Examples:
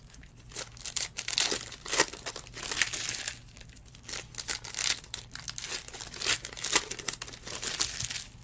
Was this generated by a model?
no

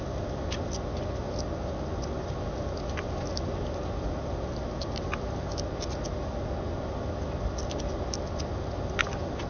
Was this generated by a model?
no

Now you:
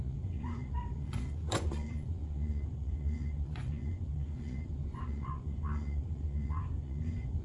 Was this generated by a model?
yes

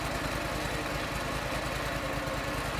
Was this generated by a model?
no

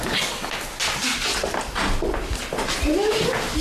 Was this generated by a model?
no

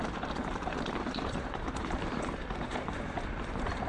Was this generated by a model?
yes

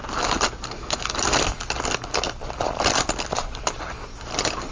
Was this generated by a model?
no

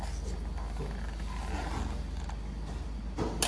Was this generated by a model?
no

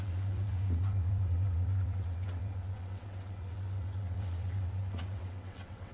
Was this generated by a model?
yes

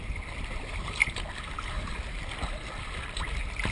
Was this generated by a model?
no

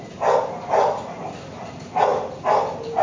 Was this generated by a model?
no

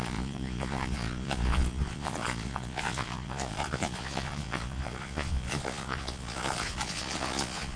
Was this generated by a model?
yes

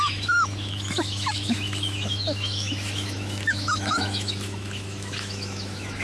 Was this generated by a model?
yes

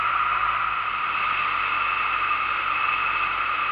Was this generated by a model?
no